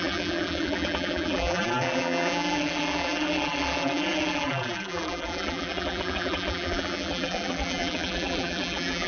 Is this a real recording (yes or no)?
no